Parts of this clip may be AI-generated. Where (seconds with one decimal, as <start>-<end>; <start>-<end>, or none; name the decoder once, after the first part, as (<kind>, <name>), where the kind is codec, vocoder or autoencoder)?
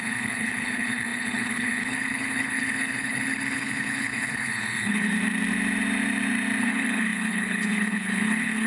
0.0-5.1 (codec, HILCodec); 6.6-8.7